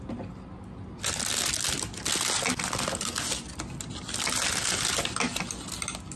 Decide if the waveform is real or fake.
real